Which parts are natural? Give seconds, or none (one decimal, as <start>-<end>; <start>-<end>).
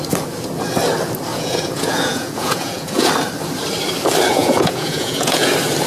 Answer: 0.0-1.3; 3.1-4.3; 5.5-5.9